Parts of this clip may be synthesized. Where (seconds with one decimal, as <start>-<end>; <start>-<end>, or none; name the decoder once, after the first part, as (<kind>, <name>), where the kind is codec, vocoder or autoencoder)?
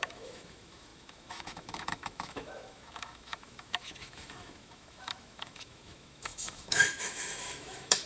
0.0-8.1 (autoencoder, DAC-VAE)